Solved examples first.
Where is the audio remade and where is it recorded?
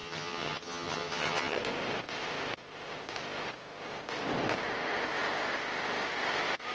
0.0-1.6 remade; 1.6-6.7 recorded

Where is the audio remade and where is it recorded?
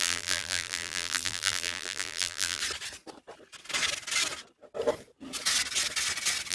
0.0-2.6 remade; 2.6-6.5 recorded